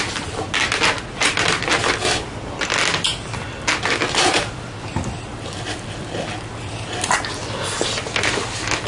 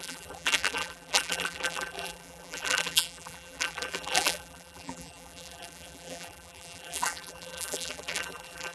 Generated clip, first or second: second